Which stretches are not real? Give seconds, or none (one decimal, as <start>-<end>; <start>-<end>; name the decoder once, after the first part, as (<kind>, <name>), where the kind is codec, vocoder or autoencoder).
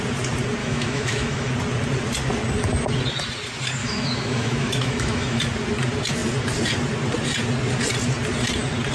0.6-1.5 (autoencoder, DAC-VAE); 3.8-5.4